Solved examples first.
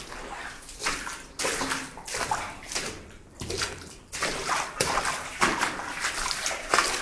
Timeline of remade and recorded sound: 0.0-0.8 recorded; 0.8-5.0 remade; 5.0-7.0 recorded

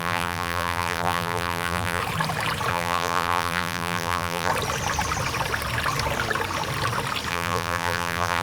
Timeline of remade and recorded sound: 0.0-2.0 remade; 2.0-2.7 recorded; 2.7-4.5 remade; 4.5-7.3 recorded; 7.3-8.4 remade